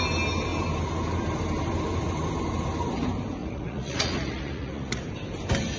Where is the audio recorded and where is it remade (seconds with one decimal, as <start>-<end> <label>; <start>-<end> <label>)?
0.0-3.4 recorded; 3.4-5.0 remade; 5.0-5.8 recorded